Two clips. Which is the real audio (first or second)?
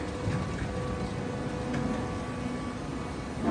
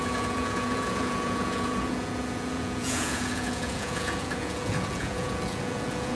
first